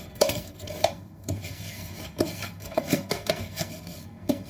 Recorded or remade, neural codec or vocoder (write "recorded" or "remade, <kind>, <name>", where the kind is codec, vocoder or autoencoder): remade, codec, SNAC